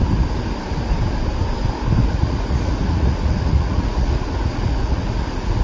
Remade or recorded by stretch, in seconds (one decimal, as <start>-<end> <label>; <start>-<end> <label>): 0.0-2.0 recorded; 2.0-5.6 remade